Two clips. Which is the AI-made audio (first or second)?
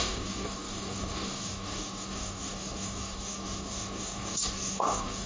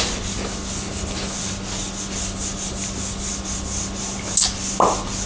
first